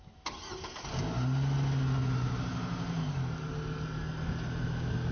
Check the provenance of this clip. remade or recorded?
recorded